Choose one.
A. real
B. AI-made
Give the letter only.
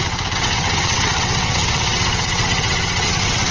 B